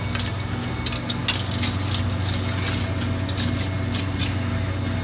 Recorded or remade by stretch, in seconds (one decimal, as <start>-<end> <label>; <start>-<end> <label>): 0.0-5.0 recorded